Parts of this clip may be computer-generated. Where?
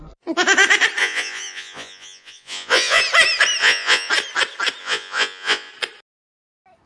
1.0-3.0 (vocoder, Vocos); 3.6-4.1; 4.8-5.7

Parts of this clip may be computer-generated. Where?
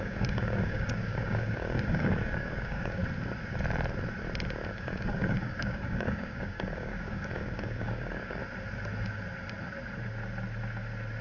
0.0-3.0 (codec, DAC); 4.7-8.4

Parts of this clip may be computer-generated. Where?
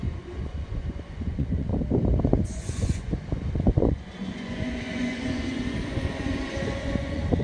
0.0-1.7 (vocoder, Vocos); 2.2-7.4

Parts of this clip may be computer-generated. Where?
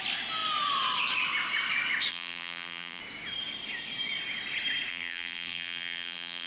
2.1-3.0 (vocoder, BigVGAN v2); 4.9-6.5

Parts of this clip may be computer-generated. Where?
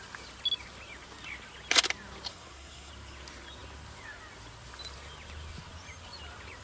2.3-2.9 (codec, SNAC)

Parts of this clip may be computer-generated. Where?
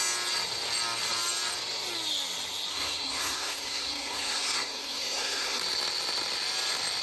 2.7-5.6 (codec, SNAC)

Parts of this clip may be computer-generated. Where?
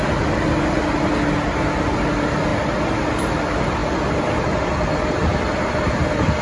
none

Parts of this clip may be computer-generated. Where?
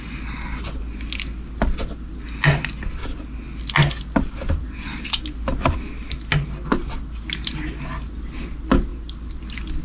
none